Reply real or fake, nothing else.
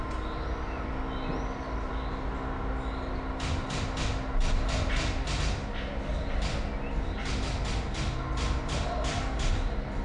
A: real